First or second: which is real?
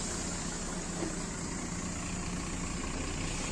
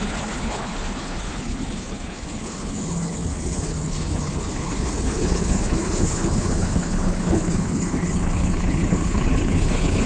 first